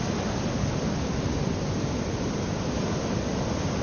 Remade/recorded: recorded